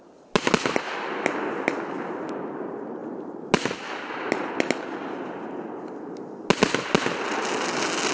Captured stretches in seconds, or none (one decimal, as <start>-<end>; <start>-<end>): 0.0-8.1

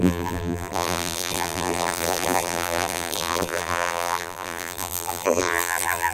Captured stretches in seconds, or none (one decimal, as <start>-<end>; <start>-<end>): none

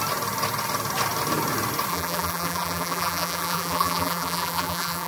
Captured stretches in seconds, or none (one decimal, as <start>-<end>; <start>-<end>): 0.0-1.9

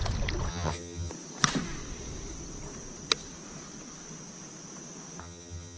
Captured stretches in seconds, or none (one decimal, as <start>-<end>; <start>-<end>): 0.0-0.5; 1.1-5.2

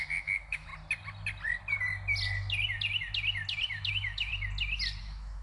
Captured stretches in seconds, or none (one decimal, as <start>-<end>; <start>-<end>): 0.7-3.9; 4.3-5.0